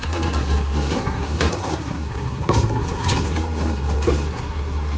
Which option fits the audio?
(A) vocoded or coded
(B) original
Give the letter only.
A